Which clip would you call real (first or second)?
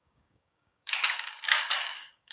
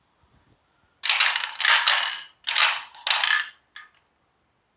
second